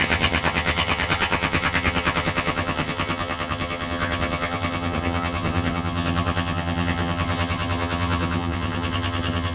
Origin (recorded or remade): remade